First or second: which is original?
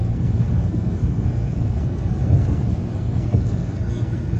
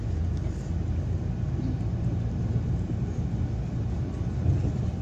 second